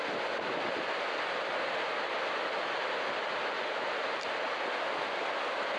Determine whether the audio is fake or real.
real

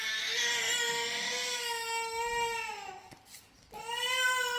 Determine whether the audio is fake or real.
real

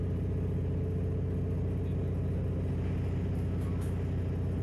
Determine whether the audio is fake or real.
real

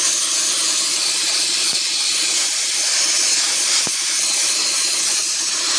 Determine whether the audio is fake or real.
real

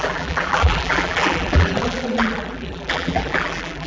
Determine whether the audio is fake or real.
fake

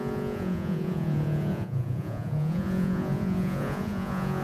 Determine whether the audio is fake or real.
fake